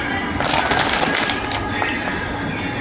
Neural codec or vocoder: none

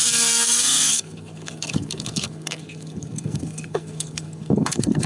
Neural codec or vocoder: codec, SNAC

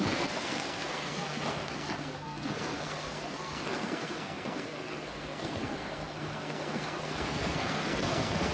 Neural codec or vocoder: codec, SNAC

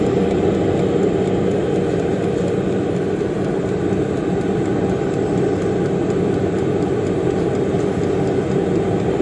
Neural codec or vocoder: none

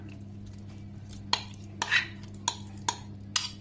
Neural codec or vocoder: none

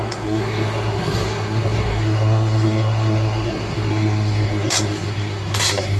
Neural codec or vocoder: codec, SNAC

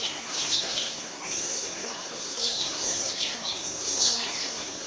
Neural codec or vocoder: codec, SNAC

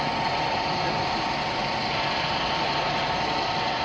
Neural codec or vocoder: none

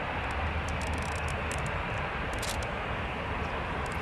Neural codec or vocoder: none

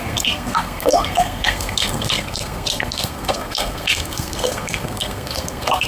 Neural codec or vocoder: codec, SNAC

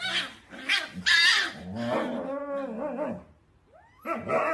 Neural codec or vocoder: none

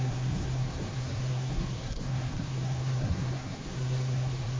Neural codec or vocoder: codec, SNAC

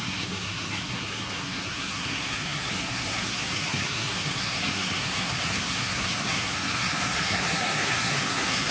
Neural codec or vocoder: codec, SNAC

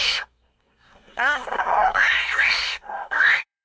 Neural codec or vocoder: codec, SNAC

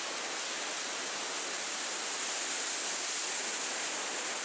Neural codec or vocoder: none